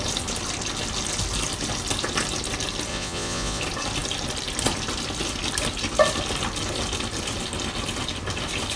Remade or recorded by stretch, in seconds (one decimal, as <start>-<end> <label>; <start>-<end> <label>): 0.0-2.9 recorded; 2.9-3.6 remade; 3.6-8.8 recorded